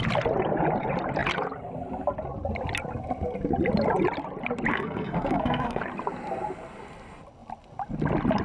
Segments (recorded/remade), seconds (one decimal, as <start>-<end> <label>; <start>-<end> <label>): 0.0-4.7 recorded; 4.7-5.8 remade; 5.8-8.4 recorded

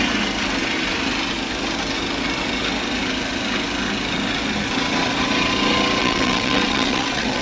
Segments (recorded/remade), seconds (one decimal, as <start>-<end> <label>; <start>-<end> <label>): 0.0-6.0 recorded; 6.0-7.4 remade

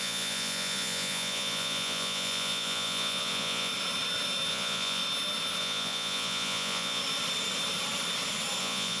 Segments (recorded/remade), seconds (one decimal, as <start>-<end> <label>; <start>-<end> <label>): 0.0-3.7 remade; 3.7-4.5 recorded; 4.5-5.0 remade; 5.0-5.6 recorded; 5.6-7.0 remade; 7.0-8.6 recorded; 8.6-9.0 remade

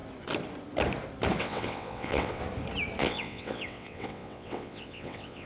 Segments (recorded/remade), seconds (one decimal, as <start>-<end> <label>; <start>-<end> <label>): 0.0-1.4 recorded; 1.4-2.4 remade; 2.4-3.0 recorded; 3.0-5.5 remade

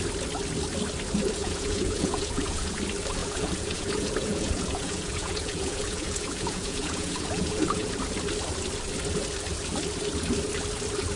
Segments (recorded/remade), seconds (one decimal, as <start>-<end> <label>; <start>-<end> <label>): 0.0-1.4 recorded; 1.4-2.8 remade; 2.8-3.2 recorded; 3.2-7.9 remade; 7.9-11.2 recorded

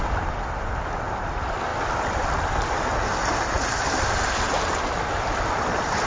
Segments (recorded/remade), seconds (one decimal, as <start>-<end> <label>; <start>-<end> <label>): 0.0-6.1 recorded